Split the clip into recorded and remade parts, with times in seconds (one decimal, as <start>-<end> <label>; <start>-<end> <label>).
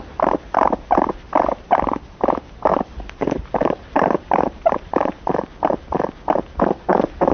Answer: 0.0-2.7 recorded; 2.7-5.8 remade; 5.8-7.3 recorded